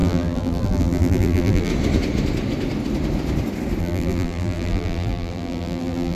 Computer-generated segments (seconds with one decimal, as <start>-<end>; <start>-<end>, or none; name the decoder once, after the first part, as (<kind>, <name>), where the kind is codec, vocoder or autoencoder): 0.0-1.7 (vocoder, BigVGAN v2); 3.8-6.2